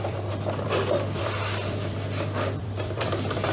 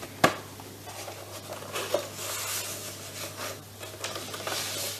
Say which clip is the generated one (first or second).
first